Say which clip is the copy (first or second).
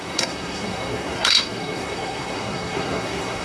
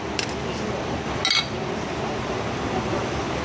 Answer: first